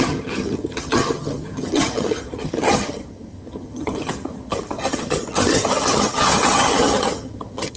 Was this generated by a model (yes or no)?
yes